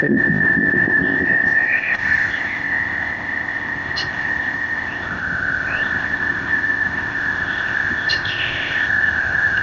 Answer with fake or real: fake